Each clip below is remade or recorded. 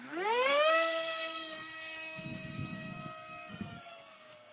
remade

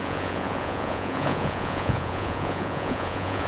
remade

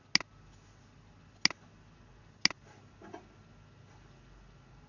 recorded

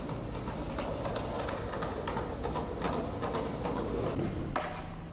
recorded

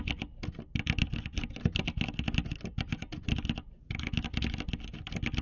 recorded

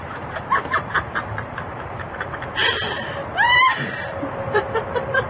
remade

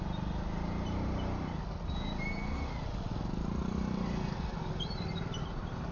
recorded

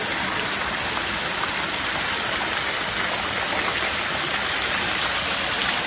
recorded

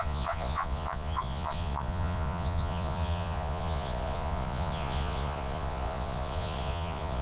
remade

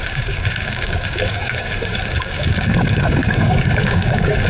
remade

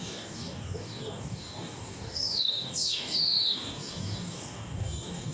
remade